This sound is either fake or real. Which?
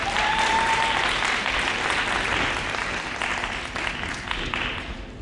real